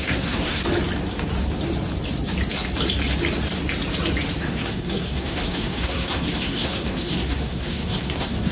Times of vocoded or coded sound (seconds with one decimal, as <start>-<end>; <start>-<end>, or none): 0.0-0.6; 4.4-8.5